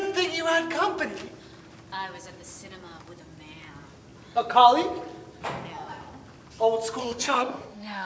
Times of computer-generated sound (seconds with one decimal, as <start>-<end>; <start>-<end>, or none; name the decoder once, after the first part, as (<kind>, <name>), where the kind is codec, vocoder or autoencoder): 7.0-8.1 (codec, SNAC)